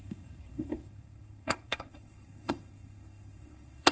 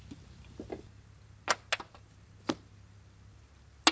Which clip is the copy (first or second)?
first